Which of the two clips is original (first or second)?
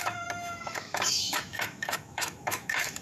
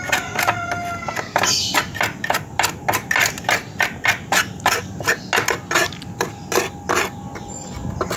second